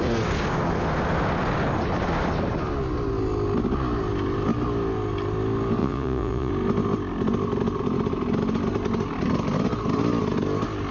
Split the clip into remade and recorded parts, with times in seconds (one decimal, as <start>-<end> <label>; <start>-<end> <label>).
0.0-5.8 recorded; 5.8-6.5 remade; 6.5-10.9 recorded